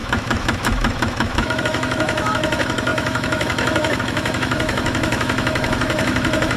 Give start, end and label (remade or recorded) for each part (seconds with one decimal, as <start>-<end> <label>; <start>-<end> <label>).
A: 0.0-6.6 remade